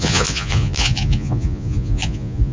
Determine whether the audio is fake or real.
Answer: fake